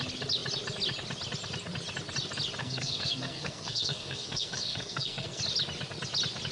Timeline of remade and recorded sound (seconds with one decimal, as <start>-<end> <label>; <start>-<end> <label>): 0.0-2.6 recorded; 2.6-5.4 remade; 5.4-6.5 recorded